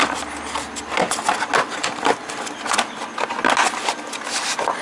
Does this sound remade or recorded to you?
recorded